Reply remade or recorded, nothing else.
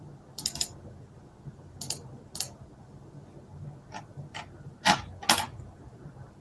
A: recorded